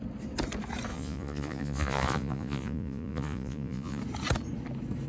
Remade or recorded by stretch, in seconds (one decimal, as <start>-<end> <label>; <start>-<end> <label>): 0.0-0.9 recorded; 0.9-4.0 remade; 4.0-5.1 recorded